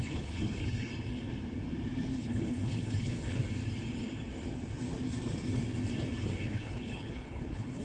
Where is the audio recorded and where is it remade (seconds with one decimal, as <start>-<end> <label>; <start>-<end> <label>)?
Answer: 0.0-0.9 remade; 0.9-2.1 recorded; 2.1-3.4 remade; 3.4-6.4 recorded; 6.4-7.8 remade